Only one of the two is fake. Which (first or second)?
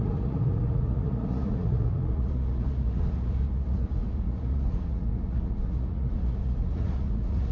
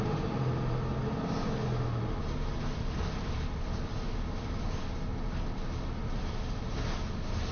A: first